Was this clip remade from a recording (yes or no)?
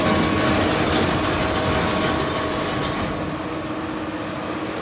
no